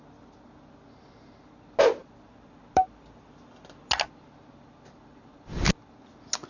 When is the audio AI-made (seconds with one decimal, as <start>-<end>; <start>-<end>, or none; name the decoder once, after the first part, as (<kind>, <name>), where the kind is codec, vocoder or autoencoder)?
none

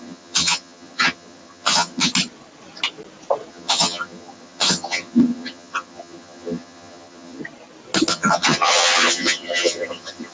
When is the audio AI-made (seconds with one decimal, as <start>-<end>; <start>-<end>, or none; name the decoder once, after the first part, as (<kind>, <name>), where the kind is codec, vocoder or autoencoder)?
0.0-2.1 (vocoder, HiFi-GAN); 3.5-7.4; 8.1-10.3